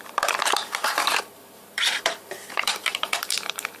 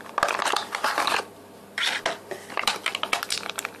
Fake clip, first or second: first